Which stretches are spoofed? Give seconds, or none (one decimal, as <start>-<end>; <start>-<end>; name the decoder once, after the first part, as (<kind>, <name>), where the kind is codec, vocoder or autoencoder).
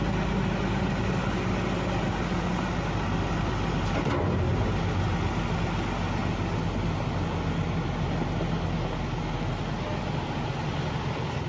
none